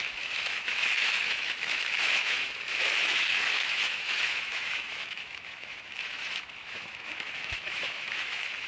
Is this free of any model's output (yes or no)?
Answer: no